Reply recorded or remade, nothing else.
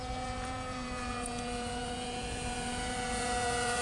remade